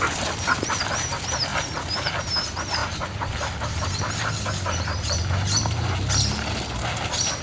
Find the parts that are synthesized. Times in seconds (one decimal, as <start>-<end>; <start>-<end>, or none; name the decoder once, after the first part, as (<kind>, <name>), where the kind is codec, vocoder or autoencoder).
none

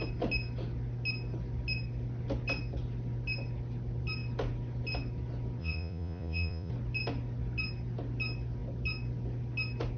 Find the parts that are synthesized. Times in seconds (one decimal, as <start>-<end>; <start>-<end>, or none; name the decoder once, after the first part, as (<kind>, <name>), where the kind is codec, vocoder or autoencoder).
5.6-6.7 (vocoder, Vocos)

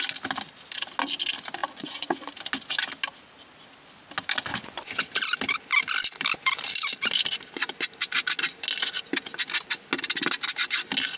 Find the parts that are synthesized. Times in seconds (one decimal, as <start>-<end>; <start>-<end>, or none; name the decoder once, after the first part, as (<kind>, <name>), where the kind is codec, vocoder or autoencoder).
1.6-2.3 (vocoder, Vocos); 4.5-5.0

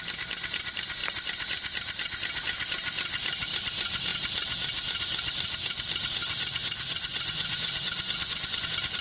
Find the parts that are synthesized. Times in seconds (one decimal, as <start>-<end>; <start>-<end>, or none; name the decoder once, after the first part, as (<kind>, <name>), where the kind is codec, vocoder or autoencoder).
6.2-8.6 (vocoder, Vocos)